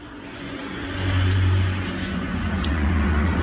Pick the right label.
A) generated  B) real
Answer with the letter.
A